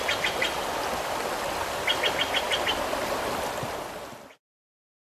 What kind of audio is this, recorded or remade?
recorded